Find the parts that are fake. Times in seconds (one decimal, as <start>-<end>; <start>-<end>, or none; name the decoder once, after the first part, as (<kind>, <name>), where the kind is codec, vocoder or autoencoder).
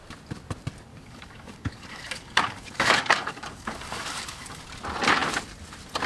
0.9-4.6 (codec, DAC)